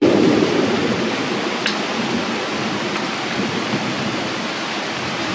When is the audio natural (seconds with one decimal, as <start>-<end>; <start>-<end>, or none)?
0.8-4.0